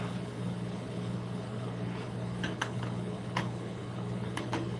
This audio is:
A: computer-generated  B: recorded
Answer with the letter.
A